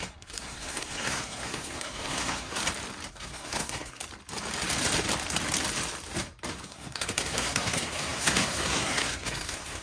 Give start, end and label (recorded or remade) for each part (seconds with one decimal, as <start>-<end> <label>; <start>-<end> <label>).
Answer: 0.0-2.6 remade; 2.6-3.1 recorded; 3.1-4.0 remade; 4.0-6.5 recorded; 6.5-9.8 remade